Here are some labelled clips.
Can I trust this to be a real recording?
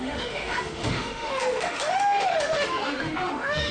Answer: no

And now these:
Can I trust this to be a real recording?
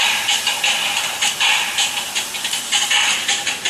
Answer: yes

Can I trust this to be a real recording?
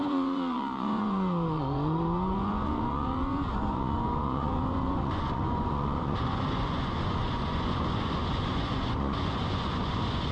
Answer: no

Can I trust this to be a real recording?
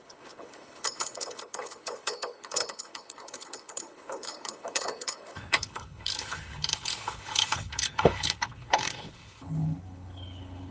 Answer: no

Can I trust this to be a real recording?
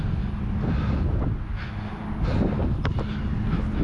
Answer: yes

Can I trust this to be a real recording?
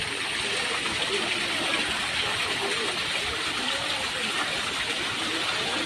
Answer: yes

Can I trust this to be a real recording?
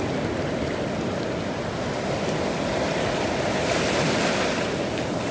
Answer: yes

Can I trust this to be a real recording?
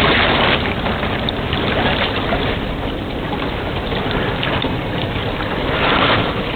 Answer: yes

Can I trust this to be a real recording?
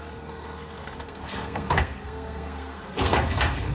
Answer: no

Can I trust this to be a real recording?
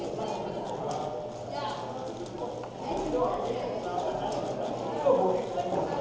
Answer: yes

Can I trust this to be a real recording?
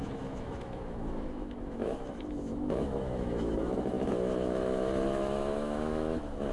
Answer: no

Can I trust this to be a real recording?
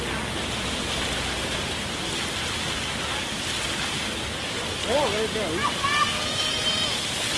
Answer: yes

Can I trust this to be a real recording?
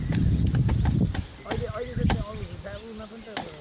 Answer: yes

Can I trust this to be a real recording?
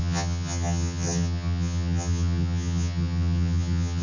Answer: no